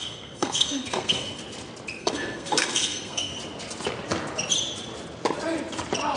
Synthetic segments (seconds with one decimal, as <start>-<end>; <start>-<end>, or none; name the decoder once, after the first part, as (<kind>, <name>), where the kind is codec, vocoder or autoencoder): 0.0-1.4 (codec, SNAC); 2.0-3.3